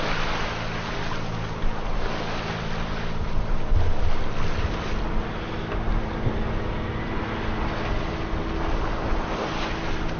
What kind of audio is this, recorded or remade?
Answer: recorded